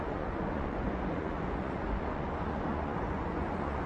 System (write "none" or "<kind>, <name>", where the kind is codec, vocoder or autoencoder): vocoder, Vocos